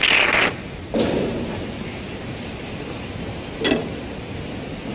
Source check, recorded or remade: recorded